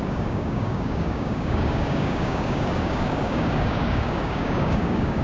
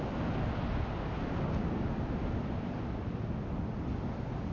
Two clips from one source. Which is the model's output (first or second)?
first